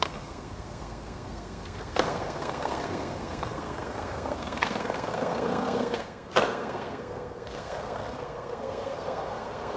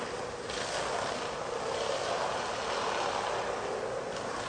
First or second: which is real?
second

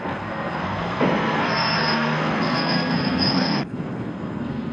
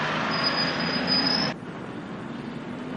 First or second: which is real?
second